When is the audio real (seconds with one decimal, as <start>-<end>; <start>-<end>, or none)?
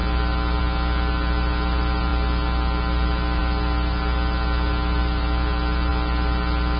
0.0-6.8